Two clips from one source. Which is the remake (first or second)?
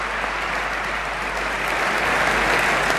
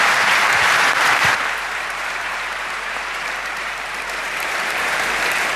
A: second